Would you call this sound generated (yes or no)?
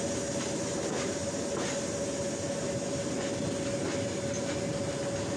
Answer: no